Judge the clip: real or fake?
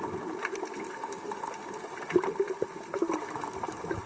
real